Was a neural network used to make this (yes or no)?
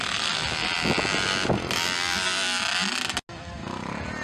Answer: no